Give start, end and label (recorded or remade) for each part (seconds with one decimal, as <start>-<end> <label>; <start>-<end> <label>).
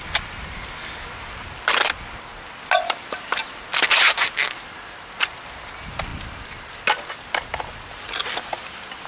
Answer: 0.0-9.1 recorded